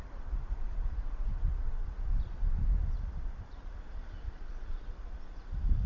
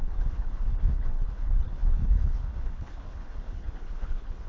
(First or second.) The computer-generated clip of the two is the second